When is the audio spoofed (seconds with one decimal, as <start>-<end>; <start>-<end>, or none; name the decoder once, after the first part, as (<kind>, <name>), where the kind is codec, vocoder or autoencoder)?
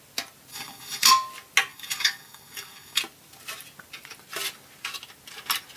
0.5-1.1 (codec, DAC); 1.7-3.0